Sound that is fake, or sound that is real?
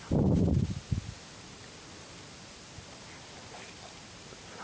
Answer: real